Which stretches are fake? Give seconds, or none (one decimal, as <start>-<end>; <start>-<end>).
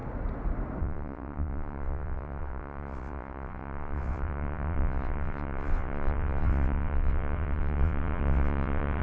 0.8-9.0